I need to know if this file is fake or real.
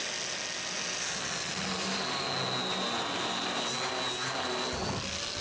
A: real